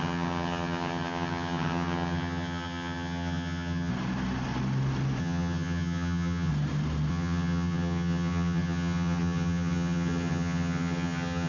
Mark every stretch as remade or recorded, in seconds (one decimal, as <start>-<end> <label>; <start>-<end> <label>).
0.0-3.9 remade; 3.9-5.2 recorded; 5.2-6.5 remade; 6.5-7.1 recorded; 7.1-11.5 remade